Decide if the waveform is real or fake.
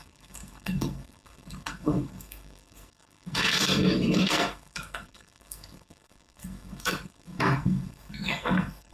fake